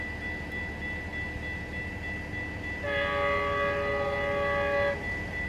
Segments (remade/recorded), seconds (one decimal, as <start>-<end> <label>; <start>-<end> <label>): 0.0-5.5 recorded